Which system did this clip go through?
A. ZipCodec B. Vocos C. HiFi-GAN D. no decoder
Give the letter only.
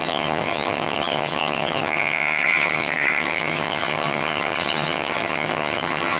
C